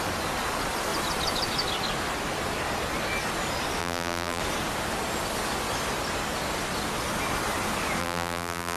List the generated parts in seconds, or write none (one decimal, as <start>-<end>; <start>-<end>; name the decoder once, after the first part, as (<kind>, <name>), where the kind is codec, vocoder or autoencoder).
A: 3.8-4.4 (vocoder, BigVGAN v2); 8.0-8.8